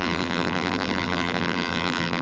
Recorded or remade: remade